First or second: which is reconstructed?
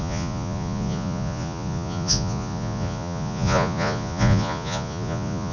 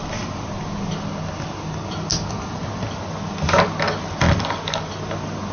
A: first